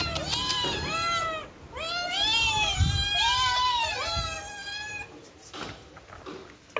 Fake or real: real